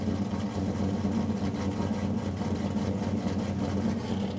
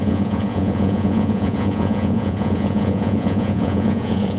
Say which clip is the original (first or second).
first